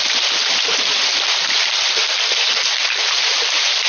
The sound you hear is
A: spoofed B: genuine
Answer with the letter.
B